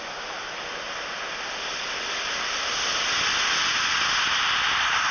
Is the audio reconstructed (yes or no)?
no